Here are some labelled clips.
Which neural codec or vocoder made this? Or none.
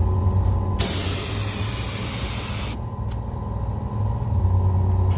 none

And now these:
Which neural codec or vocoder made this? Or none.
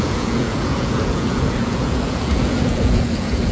vocoder, Vocos